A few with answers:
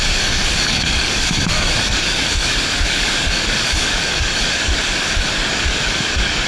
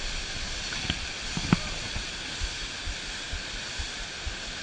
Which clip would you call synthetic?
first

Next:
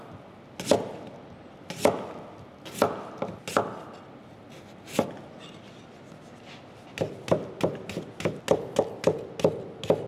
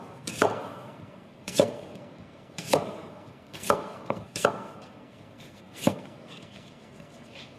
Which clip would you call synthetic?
second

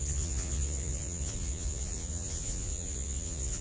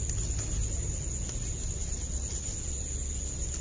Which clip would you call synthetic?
first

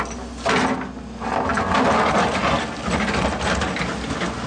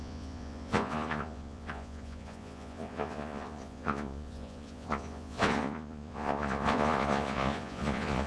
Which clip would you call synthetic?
second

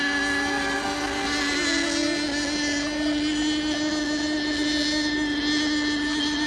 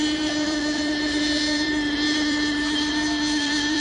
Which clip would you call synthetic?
second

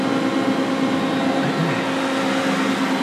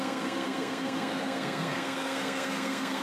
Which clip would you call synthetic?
second